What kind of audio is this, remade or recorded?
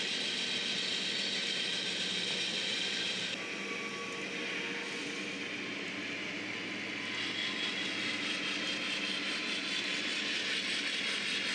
recorded